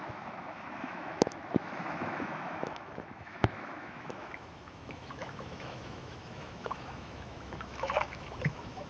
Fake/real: fake